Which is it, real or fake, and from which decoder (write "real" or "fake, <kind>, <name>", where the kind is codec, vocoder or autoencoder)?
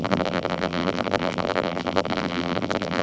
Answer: fake, vocoder, BigVGAN v2